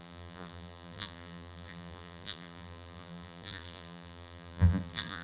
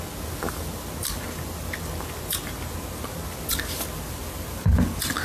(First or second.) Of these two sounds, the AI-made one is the first